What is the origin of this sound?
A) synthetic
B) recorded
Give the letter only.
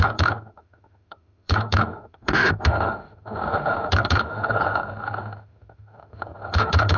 A